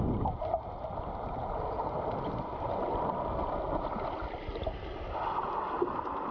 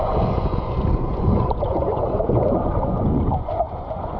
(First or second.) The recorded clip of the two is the first